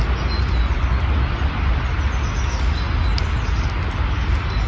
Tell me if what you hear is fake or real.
real